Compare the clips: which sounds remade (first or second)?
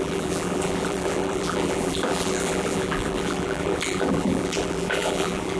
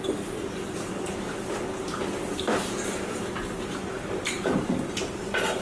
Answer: first